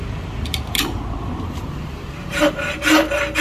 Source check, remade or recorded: remade